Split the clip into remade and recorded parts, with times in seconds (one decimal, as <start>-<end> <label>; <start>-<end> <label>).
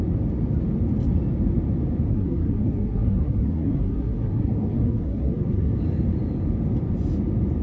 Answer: 0.0-2.1 recorded; 2.1-5.8 remade; 5.8-7.6 recorded